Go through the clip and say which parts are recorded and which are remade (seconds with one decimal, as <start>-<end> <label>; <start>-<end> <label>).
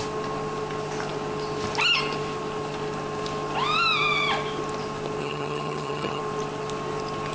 0.0-5.2 recorded; 5.2-6.2 remade; 6.2-7.3 recorded